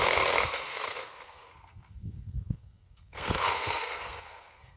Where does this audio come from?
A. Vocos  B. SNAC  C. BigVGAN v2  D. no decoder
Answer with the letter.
B